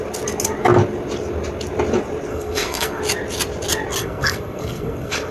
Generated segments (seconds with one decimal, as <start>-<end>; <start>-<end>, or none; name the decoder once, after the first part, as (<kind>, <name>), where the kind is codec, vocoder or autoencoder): 2.3-3.0 (codec, SNAC); 4.0-5.3